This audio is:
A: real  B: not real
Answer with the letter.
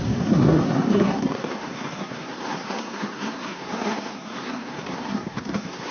B